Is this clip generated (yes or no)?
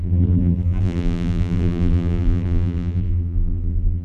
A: yes